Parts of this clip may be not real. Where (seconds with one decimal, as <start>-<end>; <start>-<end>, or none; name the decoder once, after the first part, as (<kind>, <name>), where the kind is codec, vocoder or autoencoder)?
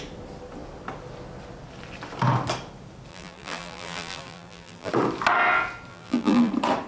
3.1-4.9 (vocoder, BigVGAN v2); 5.9-6.5